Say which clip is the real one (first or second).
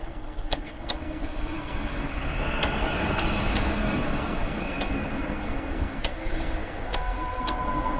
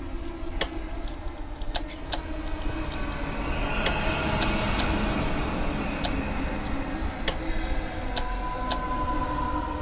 second